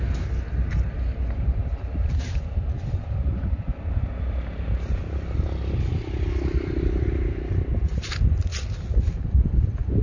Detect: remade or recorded recorded